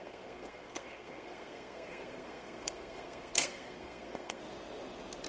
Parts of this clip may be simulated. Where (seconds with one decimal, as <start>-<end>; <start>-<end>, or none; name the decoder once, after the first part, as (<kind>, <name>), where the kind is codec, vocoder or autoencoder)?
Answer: 0.0-4.4 (codec, SNAC)